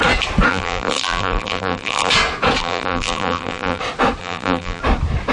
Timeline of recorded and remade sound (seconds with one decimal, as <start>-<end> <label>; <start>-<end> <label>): 0.0-0.5 recorded; 0.5-2.1 remade; 2.1-2.6 recorded; 2.6-3.8 remade; 3.8-4.2 recorded; 4.2-4.8 remade; 4.8-5.3 recorded